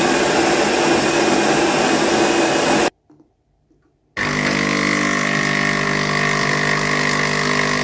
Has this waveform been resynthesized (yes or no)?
no